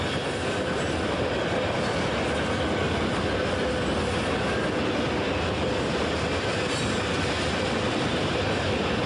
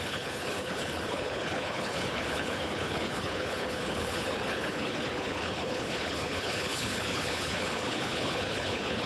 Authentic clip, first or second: first